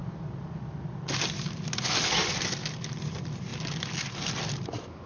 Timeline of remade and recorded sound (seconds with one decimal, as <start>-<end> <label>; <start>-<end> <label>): 0.0-5.1 recorded